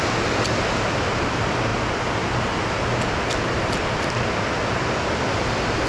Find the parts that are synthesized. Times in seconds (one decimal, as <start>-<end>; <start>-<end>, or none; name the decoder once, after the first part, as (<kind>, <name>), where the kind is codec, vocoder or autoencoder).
none